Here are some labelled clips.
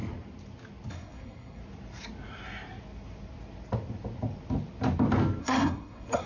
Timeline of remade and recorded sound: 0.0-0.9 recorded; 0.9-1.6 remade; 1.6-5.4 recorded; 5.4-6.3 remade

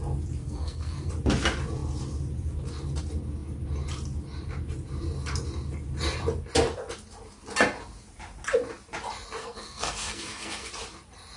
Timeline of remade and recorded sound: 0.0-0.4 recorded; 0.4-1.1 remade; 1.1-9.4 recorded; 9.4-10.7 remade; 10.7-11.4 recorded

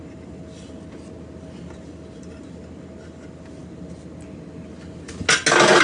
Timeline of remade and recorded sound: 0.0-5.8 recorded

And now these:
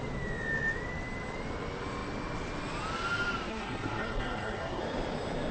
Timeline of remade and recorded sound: 0.0-3.5 recorded; 3.5-4.8 remade; 4.8-5.5 recorded

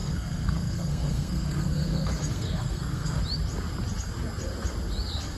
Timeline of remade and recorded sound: 0.0-3.2 remade; 3.2-5.4 recorded